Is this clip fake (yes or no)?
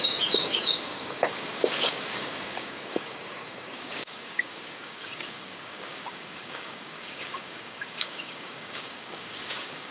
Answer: yes